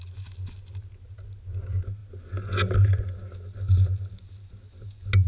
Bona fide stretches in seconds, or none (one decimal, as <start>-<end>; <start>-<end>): 0.0-5.3